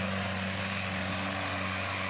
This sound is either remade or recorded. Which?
recorded